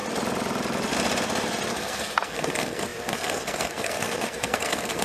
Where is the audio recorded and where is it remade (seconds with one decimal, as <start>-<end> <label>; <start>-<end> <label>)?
0.0-1.7 recorded; 1.7-5.0 remade